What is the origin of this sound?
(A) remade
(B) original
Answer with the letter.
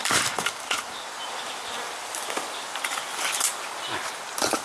A